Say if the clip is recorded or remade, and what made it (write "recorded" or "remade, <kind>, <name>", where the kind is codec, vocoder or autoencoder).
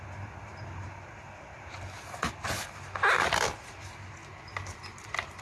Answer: recorded